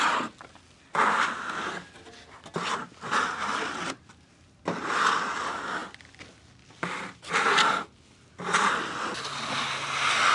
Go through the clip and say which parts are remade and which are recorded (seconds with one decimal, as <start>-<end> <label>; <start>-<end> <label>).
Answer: 0.0-10.3 recorded